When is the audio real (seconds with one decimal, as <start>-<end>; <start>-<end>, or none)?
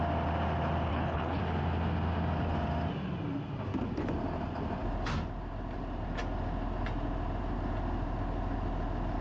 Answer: 0.0-0.9; 1.4-9.2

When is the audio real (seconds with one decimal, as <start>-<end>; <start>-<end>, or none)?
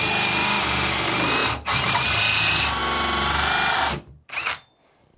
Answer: 0.0-5.2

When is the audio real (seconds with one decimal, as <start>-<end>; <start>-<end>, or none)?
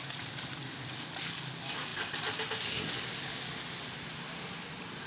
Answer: none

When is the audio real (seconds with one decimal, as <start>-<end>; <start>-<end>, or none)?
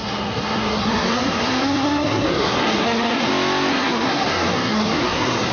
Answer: 3.3-3.7